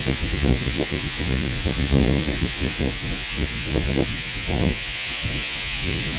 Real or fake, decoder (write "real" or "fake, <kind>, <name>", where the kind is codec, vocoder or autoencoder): fake, vocoder, Vocos